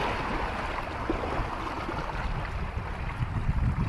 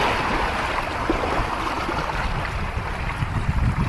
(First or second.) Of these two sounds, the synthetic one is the second